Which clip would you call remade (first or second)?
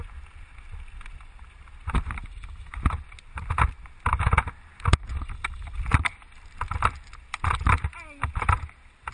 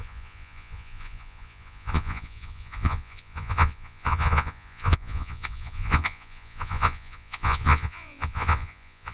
second